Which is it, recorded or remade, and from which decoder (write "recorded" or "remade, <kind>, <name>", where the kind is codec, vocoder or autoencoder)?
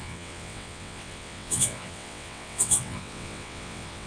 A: remade, vocoder, WaveNeXt